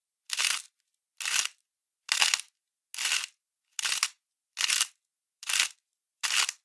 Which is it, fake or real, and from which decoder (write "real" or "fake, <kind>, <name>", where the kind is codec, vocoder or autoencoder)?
real